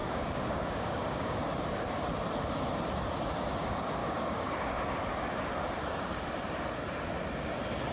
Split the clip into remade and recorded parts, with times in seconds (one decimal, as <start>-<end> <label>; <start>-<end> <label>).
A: 0.0-1.4 remade; 1.4-4.0 recorded; 4.0-4.8 remade; 4.8-7.9 recorded